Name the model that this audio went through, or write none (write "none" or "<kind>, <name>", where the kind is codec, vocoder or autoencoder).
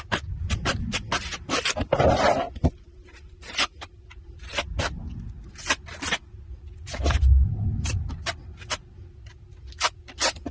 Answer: none